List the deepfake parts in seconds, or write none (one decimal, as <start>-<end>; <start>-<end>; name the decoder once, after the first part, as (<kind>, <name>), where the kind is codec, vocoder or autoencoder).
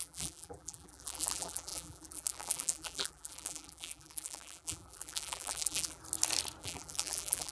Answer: 0.0-6.0 (vocoder, BigVGAN v2); 6.6-7.5